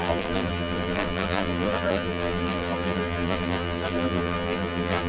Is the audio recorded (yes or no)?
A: no